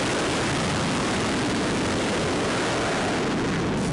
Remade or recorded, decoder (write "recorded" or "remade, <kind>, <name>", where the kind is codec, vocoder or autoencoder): recorded